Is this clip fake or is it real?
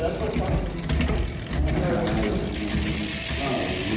real